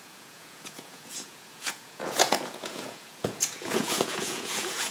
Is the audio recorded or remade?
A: remade